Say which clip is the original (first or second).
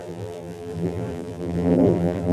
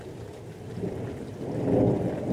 second